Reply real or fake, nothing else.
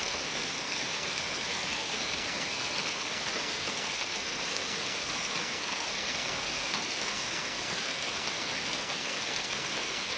fake